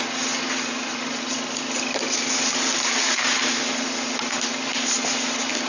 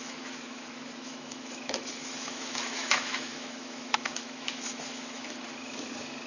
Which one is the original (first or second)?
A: first